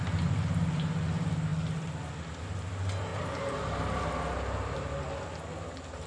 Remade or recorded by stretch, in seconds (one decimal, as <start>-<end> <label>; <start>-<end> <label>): 0.0-6.1 recorded